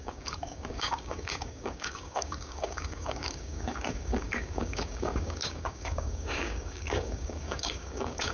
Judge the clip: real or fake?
fake